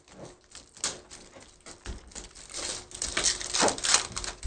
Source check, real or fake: real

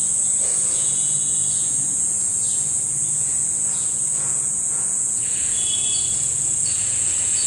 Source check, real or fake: fake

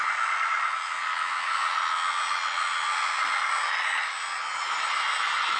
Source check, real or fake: real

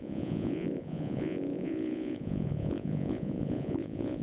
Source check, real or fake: fake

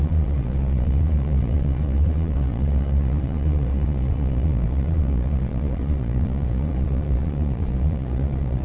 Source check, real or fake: fake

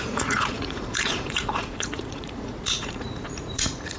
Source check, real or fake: fake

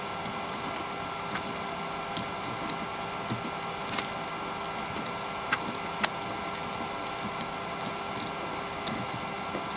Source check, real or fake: real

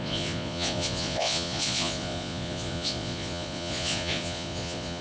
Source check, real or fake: fake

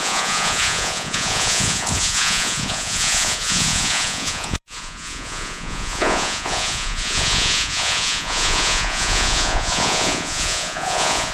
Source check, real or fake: fake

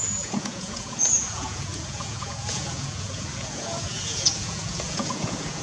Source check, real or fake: fake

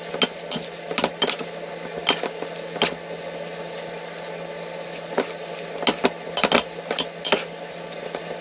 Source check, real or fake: real